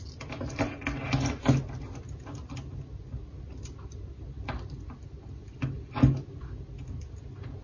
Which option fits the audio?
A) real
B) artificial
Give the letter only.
A